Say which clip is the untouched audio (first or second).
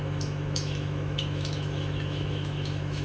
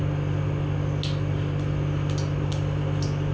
second